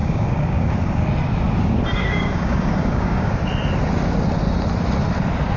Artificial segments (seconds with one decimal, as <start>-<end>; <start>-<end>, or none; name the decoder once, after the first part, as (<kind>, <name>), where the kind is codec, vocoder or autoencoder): 0.0-0.7 (codec, DAC); 2.0-3.3